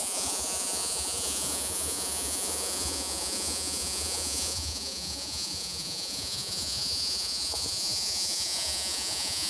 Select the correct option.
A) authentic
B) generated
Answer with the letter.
B